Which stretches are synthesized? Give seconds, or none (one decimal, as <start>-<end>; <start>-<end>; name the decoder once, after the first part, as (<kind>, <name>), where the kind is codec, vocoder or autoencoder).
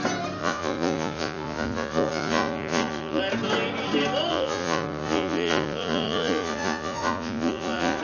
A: 0.4-3.2 (vocoder, Vocos); 4.3-8.0